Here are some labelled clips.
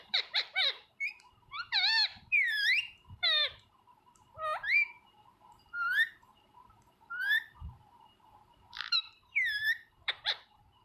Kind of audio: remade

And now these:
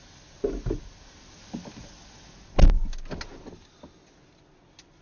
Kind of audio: recorded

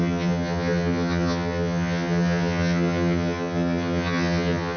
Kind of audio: remade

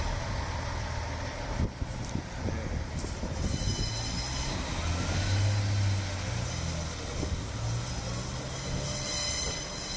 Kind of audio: recorded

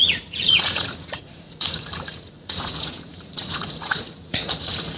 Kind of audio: remade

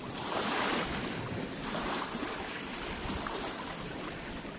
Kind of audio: remade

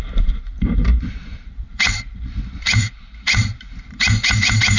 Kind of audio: remade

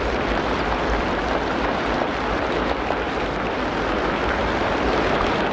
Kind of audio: recorded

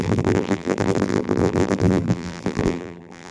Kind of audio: remade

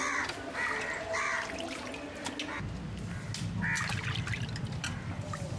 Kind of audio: recorded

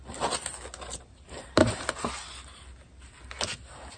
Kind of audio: recorded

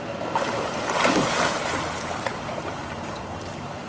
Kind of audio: recorded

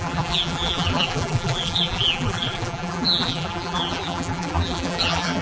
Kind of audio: remade